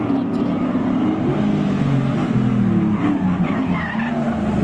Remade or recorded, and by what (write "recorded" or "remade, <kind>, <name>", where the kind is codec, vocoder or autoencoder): recorded